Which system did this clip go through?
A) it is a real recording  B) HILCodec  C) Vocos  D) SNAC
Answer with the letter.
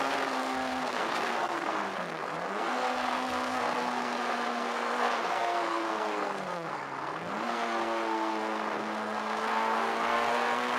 D